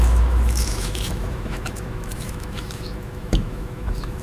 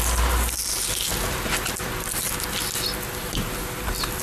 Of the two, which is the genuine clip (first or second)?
second